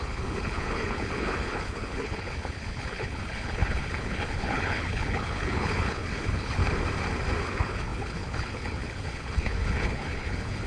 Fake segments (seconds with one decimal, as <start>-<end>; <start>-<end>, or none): 0.0-6.6; 7.4-10.7